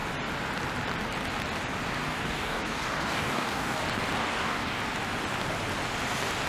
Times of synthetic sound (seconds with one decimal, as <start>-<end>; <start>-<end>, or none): 2.1-3.8; 4.2-4.8